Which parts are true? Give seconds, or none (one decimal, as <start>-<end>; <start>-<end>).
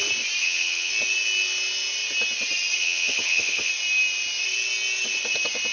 0.0-0.4; 0.9-2.8; 3.7-5.7